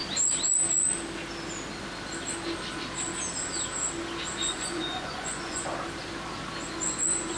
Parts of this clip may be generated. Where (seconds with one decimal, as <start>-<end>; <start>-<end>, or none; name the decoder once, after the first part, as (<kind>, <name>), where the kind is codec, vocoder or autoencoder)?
4.4-5.7 (vocoder, Vocos); 6.7-7.4